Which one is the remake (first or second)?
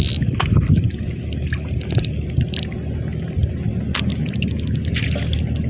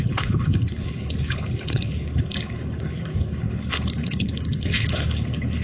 second